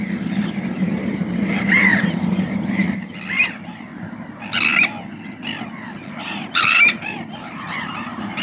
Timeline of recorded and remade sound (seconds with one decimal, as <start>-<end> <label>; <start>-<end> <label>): 0.0-2.8 remade; 2.8-3.4 recorded; 3.4-3.9 remade; 3.9-6.2 recorded; 6.2-8.4 remade